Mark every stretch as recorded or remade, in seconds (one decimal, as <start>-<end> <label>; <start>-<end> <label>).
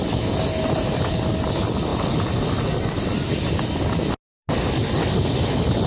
0.0-5.9 recorded